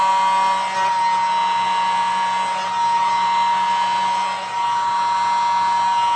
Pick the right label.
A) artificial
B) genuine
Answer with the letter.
B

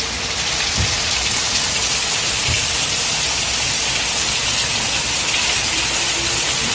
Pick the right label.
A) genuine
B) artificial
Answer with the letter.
A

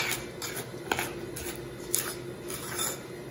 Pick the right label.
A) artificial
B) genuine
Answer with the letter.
B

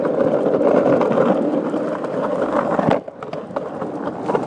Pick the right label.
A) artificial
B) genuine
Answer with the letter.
B